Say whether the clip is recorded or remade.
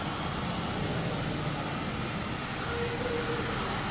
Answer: recorded